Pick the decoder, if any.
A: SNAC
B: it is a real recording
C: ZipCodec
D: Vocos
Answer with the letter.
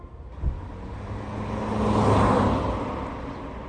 B